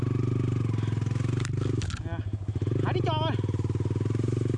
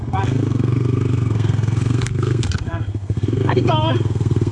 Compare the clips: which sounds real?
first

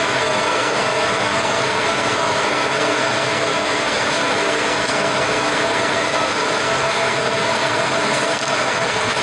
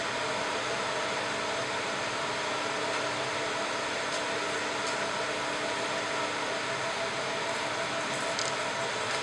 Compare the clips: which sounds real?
second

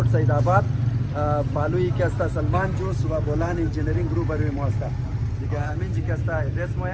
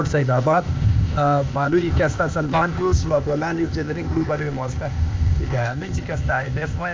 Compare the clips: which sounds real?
first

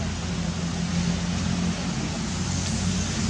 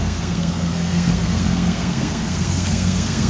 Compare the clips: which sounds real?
first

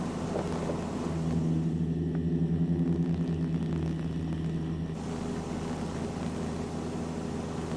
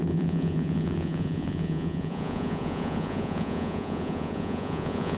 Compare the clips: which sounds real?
first